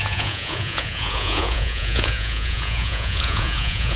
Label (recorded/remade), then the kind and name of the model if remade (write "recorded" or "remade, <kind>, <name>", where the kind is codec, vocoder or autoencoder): remade, vocoder, Vocos